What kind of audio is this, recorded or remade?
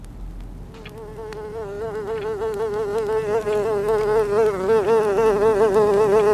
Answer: recorded